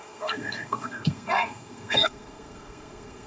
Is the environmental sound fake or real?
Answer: fake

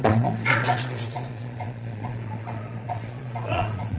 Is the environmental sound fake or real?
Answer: fake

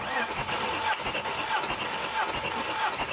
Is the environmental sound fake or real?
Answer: real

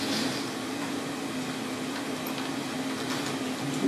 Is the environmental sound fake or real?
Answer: real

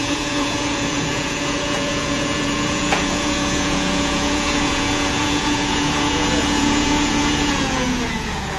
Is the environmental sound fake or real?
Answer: fake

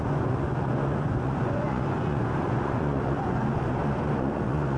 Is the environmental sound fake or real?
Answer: fake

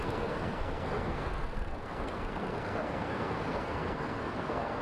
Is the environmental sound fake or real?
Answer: fake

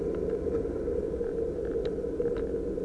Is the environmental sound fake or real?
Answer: real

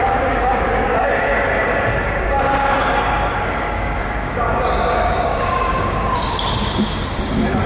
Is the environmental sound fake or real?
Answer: fake